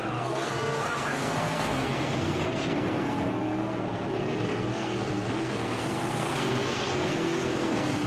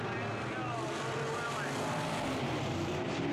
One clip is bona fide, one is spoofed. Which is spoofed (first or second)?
first